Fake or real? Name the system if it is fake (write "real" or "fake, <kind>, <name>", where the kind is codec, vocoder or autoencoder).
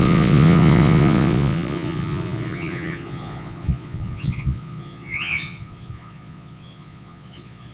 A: fake, vocoder, Vocos